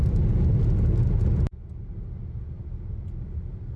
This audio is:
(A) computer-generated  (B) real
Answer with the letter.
B